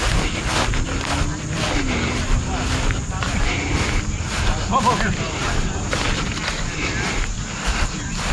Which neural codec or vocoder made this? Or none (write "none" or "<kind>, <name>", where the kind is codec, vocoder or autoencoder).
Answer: none